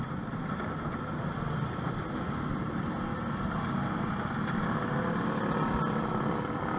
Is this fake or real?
real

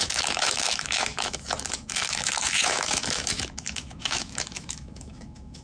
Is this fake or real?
fake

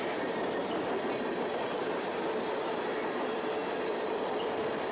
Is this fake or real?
real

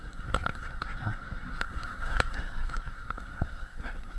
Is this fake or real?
fake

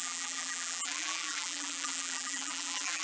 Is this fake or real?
fake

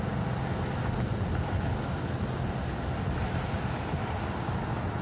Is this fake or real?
real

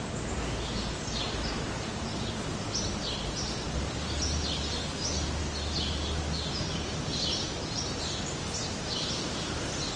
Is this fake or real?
real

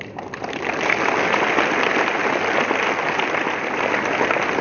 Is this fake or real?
real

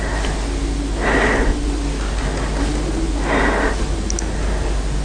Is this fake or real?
real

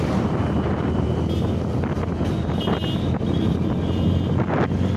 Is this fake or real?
real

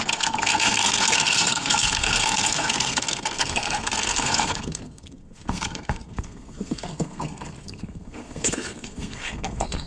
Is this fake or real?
fake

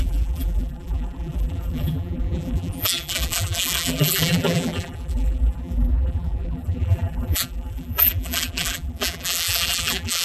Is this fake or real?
fake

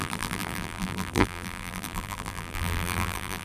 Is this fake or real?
fake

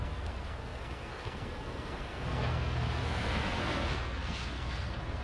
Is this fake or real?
fake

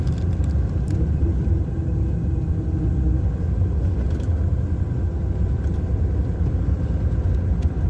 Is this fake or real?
real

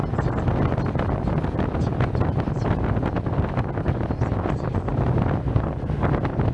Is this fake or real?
real